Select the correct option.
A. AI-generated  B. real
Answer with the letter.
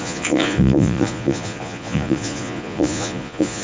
A